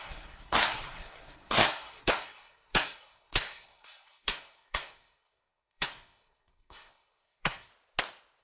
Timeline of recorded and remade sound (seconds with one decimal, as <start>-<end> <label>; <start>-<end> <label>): 0.0-7.7 remade; 7.7-8.4 recorded